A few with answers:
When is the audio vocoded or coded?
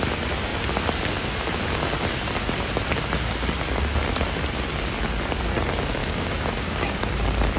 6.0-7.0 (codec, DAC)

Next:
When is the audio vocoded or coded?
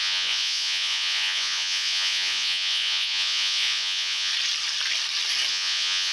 0.0-4.3 (vocoder, Vocos); 5.5-6.1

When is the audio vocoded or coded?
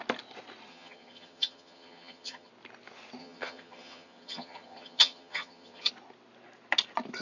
0.7-2.5 (vocoder, HiFi-GAN); 3.2-5.9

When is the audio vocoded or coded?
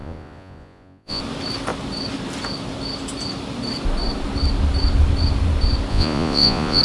0.0-1.2 (vocoder, Vocos); 5.9-6.8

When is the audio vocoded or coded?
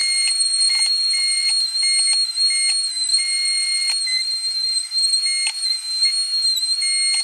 0.0-1.5 (vocoder, BigVGAN v2); 3.1-3.9